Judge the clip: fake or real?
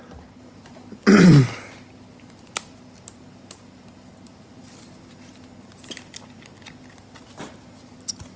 real